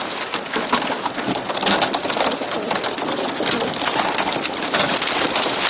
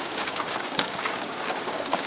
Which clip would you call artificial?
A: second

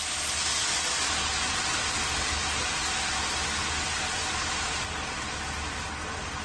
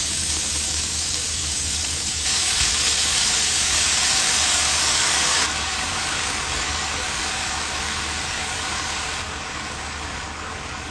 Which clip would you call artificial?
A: second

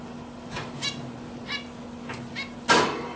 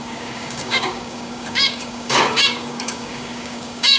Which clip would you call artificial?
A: second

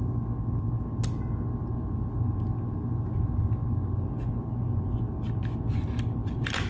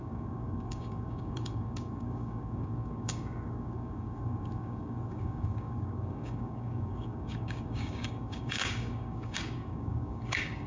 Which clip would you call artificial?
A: second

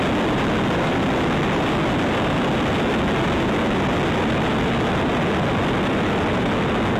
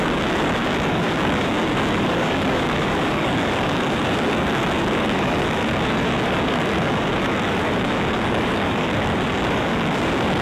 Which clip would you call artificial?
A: second